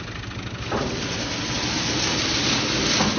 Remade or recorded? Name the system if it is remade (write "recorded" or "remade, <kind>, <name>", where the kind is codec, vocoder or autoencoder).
recorded